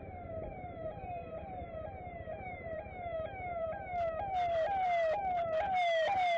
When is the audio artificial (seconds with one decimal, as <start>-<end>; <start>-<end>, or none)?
0.0-6.4

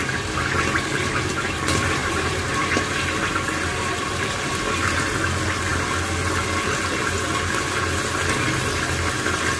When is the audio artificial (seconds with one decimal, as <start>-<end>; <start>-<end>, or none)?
2.0-3.0; 3.7-4.5

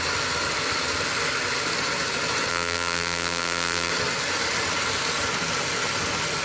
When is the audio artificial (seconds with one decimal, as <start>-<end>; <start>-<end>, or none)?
2.5-3.9

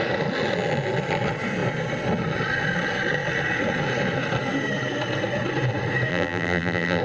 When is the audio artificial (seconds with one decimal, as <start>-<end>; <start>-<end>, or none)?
6.1-7.0

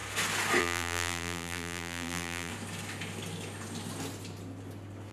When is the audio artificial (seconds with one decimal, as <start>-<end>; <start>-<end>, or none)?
0.6-2.5

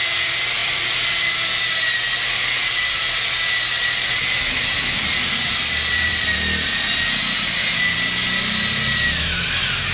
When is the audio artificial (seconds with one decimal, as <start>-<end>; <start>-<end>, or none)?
0.6-1.3; 2.6-6.9